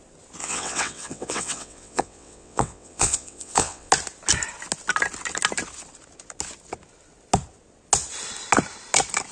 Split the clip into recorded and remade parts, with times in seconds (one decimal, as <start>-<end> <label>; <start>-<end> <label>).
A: 0.0-0.4 recorded; 0.4-3.9 remade; 3.9-9.3 recorded